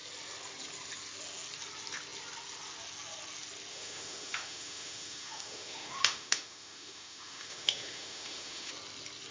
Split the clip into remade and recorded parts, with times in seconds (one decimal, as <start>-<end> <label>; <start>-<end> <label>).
0.0-3.7 recorded; 3.7-8.7 remade; 8.7-9.3 recorded